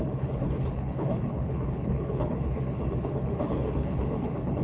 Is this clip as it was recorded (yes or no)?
no